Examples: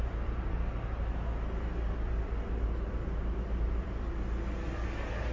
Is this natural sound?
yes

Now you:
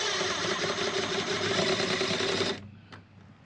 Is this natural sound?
yes